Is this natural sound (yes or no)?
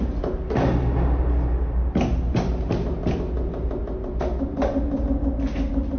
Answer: yes